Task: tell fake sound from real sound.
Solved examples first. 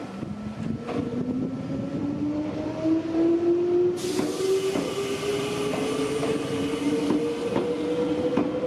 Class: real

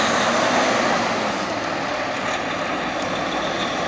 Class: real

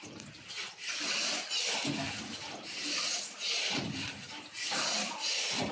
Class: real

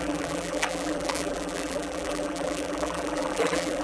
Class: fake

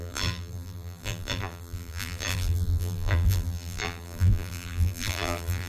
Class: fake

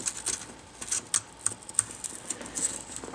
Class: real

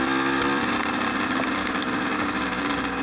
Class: real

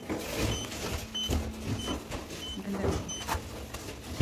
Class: real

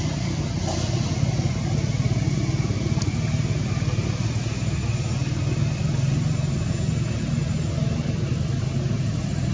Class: real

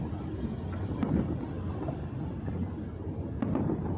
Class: real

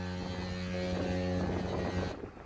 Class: real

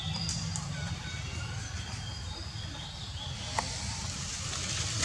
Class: real